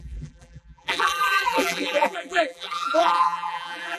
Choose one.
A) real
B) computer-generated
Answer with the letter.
B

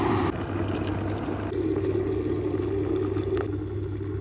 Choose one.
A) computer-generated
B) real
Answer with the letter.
B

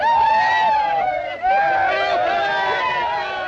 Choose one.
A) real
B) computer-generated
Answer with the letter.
A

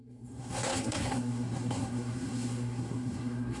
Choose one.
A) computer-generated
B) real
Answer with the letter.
A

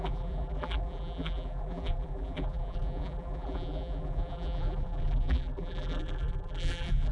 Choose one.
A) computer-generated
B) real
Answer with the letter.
A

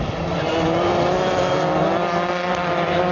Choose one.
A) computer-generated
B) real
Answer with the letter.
B